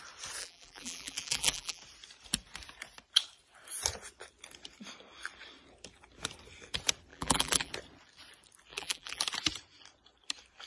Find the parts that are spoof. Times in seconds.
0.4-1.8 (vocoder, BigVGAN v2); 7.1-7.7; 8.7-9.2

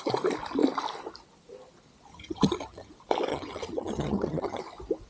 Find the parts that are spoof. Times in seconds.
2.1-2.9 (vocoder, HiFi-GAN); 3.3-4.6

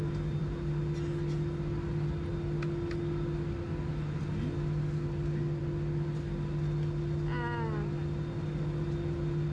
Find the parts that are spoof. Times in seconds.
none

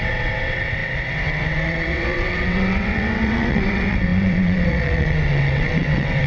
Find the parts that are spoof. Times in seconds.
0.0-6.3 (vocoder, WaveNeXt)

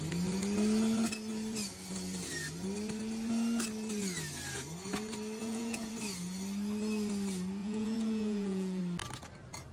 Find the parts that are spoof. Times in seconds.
5.4-5.9 (vocoder, Vocos); 7.6-8.8